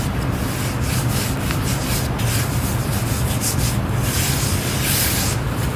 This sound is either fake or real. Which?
real